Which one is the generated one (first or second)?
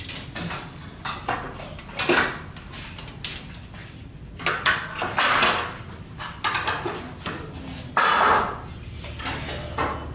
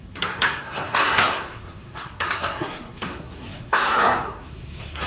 second